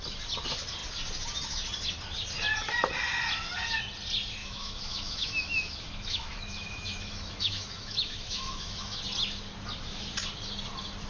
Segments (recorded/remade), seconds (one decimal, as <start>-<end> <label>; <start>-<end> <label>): 0.0-4.4 recorded; 4.4-9.0 remade; 9.0-11.1 recorded